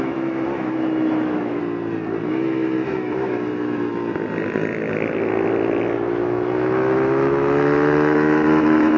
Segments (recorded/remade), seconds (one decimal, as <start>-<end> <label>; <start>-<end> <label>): 0.0-1.6 remade; 1.6-2.3 recorded; 2.3-4.0 remade; 4.0-6.2 recorded; 6.2-9.0 remade